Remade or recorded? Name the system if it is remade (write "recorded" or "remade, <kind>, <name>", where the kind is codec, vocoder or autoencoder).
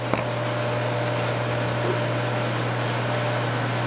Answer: recorded